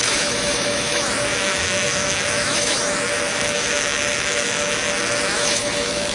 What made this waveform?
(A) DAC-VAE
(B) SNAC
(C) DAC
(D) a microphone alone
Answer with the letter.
A